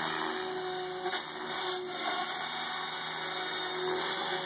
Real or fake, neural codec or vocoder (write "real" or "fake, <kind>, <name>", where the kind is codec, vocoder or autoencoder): real